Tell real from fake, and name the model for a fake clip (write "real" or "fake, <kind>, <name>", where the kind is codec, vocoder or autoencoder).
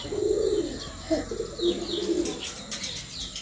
real